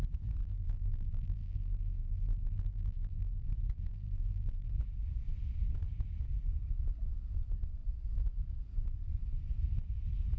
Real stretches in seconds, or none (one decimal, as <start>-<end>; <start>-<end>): 0.0-0.4; 3.5-3.9; 4.7-10.4